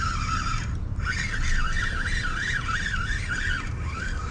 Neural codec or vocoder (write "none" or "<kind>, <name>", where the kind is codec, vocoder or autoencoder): none